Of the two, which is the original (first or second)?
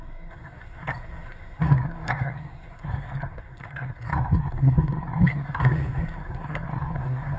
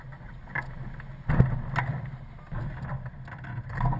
second